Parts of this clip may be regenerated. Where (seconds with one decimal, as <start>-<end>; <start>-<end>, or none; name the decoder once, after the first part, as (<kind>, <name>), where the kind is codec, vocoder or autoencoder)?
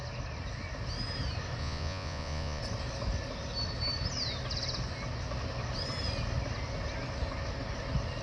1.6-2.6 (vocoder, Vocos)